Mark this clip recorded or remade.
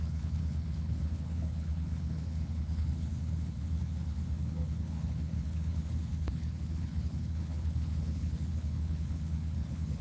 remade